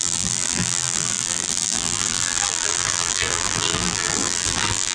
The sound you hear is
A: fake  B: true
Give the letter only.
A